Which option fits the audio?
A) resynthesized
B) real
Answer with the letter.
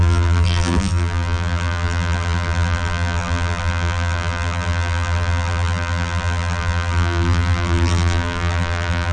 A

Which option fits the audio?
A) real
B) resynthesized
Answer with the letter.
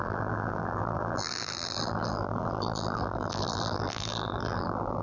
B